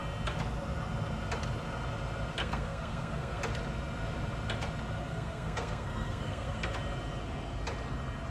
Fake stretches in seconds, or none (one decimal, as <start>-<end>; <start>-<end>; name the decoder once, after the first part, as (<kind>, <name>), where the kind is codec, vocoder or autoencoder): 2.4-3.4 (codec, SNAC); 5.0-6.7